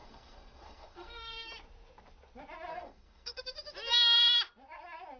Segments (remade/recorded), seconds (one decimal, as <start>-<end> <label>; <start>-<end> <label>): 0.0-1.5 remade; 1.5-2.7 recorded; 2.7-3.4 remade; 3.4-5.2 recorded